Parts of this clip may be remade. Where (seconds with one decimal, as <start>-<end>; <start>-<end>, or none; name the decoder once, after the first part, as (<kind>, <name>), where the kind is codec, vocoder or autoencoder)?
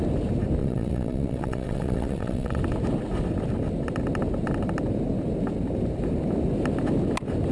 0.6-2.6 (vocoder, WaveNeXt)